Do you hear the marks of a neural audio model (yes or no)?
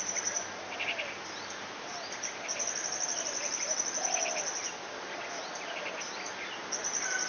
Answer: no